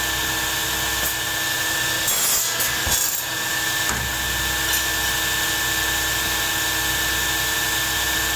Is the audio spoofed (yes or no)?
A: no